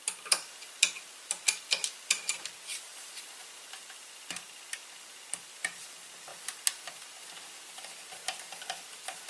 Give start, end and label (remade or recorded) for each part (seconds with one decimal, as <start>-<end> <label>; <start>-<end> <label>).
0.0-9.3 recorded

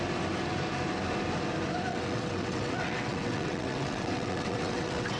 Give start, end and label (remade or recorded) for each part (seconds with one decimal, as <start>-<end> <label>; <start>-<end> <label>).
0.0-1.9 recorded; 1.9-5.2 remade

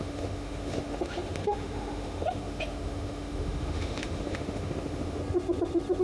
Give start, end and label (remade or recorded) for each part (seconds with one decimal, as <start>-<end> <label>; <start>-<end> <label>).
0.0-5.2 remade; 5.2-6.0 recorded

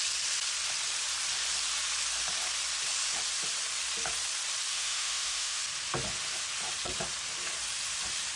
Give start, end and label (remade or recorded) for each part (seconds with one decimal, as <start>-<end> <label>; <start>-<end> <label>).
0.0-4.7 recorded; 4.7-5.6 remade; 5.6-8.4 recorded

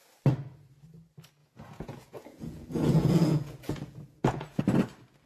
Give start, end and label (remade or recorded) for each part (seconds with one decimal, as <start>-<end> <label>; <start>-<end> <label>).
0.0-1.4 recorded; 1.4-4.6 remade; 4.6-5.3 recorded